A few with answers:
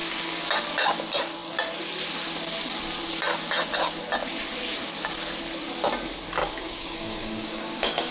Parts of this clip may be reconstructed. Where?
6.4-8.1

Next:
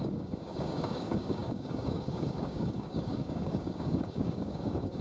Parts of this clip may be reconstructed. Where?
0.0-5.0

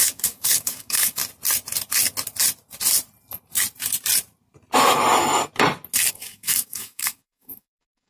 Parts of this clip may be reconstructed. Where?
0.0-1.2; 6.1-8.1

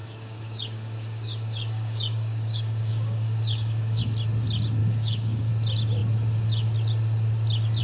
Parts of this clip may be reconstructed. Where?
0.0-4.0; 4.8-5.5